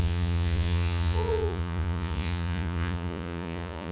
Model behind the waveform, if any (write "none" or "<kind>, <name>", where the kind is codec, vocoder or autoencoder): vocoder, Vocos